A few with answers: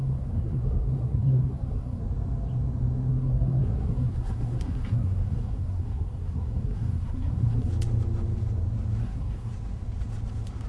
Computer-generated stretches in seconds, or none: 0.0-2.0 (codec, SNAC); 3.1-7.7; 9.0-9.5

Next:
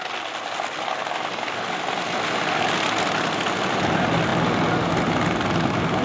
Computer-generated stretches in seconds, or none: none

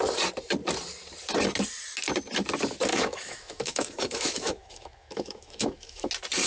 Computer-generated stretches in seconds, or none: 2.9-6.1 (autoencoder, DAC-VAE)

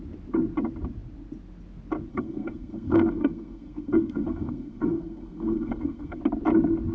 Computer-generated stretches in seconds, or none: 2.1-6.2 (codec, SNAC)